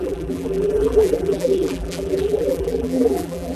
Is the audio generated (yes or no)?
yes